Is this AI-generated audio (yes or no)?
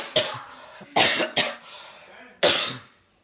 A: no